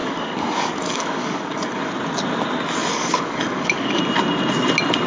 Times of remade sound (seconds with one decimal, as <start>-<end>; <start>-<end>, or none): 0.0-1.9; 2.8-4.0

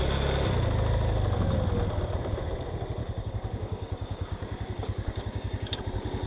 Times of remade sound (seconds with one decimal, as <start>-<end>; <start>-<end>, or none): 3.0-5.8

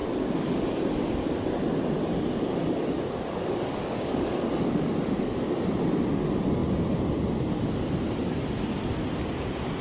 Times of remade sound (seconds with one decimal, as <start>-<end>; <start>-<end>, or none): 2.5-5.7

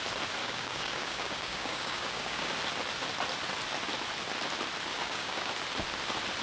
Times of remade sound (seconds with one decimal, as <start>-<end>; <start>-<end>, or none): 0.4-2.5; 4.9-5.5

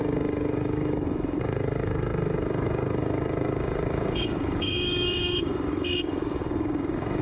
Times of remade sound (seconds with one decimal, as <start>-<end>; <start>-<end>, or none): 0.0-7.2